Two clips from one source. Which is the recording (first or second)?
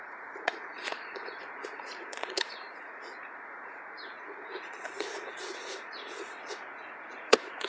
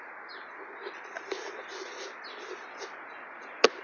second